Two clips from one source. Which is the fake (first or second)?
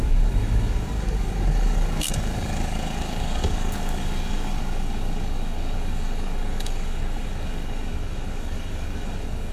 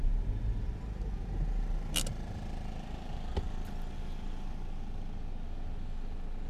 first